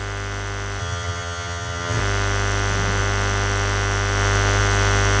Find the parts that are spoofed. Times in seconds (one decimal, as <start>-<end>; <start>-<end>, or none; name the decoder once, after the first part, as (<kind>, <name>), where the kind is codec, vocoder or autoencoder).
0.8-2.0 (vocoder, HiFi-GAN)